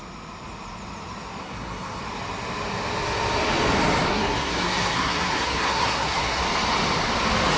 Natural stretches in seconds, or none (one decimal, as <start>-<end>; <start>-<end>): 0.0-1.4; 2.0-4.1; 6.4-7.6